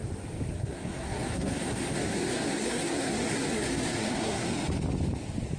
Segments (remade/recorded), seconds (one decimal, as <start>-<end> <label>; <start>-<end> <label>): 0.0-0.5 recorded; 0.5-4.5 remade; 4.5-5.6 recorded